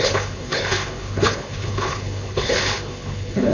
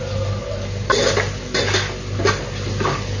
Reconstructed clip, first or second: first